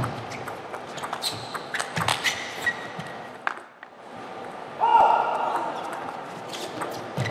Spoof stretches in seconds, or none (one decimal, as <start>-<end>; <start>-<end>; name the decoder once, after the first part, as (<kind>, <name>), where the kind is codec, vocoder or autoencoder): none